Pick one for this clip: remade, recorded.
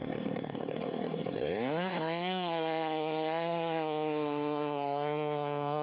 remade